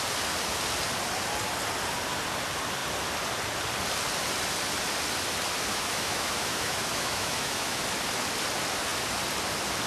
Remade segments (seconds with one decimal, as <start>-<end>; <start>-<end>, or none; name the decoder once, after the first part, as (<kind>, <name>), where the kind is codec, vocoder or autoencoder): 5.7-7.8 (autoencoder, DAC-VAE)